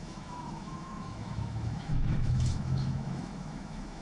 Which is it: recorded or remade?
remade